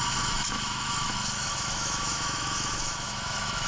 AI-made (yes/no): yes